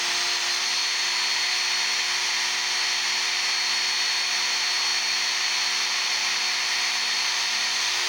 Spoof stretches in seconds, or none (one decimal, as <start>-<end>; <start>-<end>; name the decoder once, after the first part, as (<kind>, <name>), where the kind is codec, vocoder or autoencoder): none